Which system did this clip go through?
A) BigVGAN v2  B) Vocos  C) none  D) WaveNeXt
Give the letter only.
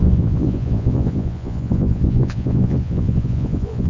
B